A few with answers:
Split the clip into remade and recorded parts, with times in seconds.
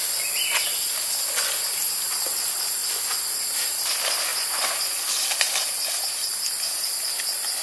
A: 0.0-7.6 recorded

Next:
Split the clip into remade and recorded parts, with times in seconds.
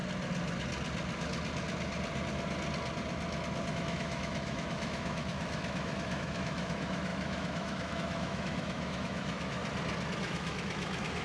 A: 0.0-3.7 recorded; 3.7-9.6 remade; 9.6-10.2 recorded; 10.2-11.2 remade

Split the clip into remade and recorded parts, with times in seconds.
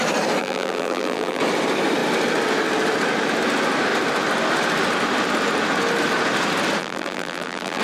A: 0.0-0.4 recorded; 0.4-1.4 remade; 1.4-6.8 recorded; 6.8-7.8 remade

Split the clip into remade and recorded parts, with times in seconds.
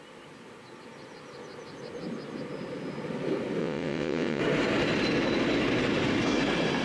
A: 0.0-3.6 recorded; 3.6-4.4 remade; 4.4-6.8 recorded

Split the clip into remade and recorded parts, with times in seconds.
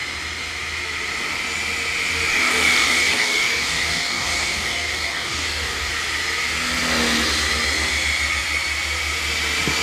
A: 0.0-2.3 recorded; 2.3-5.9 remade; 5.9-9.8 recorded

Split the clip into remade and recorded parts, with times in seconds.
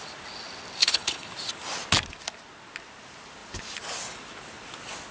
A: 0.0-0.8 recorded; 0.8-1.3 remade; 1.3-5.1 recorded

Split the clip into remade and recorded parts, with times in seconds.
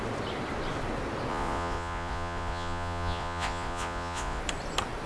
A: 0.0-1.3 recorded; 1.3-4.4 remade; 4.4-5.1 recorded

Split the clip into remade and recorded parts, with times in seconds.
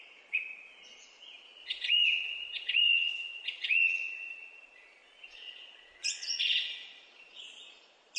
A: 0.0-8.2 remade